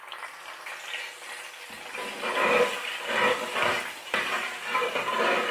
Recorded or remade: recorded